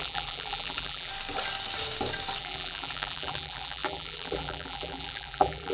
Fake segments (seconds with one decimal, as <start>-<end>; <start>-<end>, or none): 0.0-1.1; 2.4-5.7